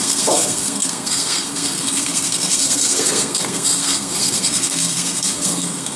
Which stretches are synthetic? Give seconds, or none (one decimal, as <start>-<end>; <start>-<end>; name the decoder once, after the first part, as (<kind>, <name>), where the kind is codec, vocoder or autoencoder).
0.0-6.0 (codec, SNAC)